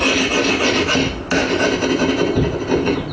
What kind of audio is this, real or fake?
real